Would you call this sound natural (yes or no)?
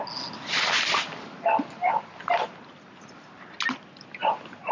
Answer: yes